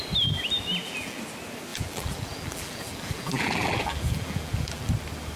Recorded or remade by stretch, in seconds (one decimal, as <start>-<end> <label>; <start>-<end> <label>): 0.0-0.7 recorded; 0.7-1.2 remade; 1.2-1.7 recorded; 1.7-4.9 remade; 4.9-5.4 recorded